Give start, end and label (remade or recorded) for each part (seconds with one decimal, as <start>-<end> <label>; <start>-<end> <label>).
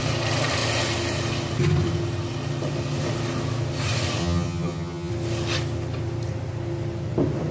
0.0-4.2 recorded; 4.2-5.1 remade; 5.1-7.5 recorded